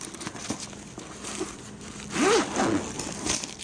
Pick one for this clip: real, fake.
real